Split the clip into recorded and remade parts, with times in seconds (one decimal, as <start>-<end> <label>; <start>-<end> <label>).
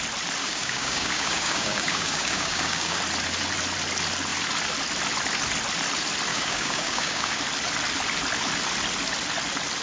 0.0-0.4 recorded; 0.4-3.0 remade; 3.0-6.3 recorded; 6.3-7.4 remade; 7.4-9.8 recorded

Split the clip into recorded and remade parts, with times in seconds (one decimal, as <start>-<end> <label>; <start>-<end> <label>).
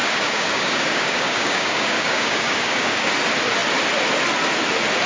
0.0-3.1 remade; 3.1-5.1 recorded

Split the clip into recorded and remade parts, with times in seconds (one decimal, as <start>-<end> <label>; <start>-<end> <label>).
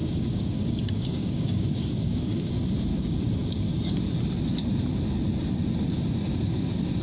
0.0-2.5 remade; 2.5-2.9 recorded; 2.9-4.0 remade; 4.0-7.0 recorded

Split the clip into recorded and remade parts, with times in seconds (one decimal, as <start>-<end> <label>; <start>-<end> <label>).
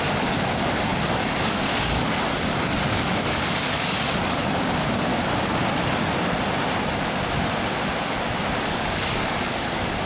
0.0-5.1 remade; 5.1-8.6 recorded; 8.6-10.1 remade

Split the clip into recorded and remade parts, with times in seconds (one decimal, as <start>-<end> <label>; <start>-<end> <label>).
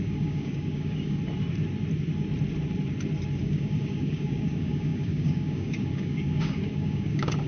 0.0-1.2 remade; 1.2-3.4 recorded; 3.4-7.5 remade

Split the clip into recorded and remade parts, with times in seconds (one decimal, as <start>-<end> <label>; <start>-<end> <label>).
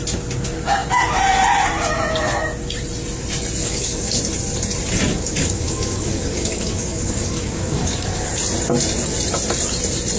0.0-3.6 recorded; 3.6-4.2 remade; 4.2-5.1 recorded; 5.1-8.3 remade; 8.3-10.2 recorded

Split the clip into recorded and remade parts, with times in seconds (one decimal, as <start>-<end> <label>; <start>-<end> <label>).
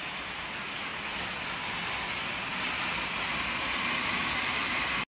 0.0-5.1 recorded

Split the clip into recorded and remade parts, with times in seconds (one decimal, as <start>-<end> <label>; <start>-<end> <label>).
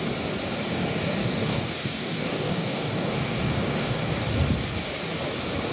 0.0-1.2 recorded; 1.2-4.1 remade; 4.1-5.7 recorded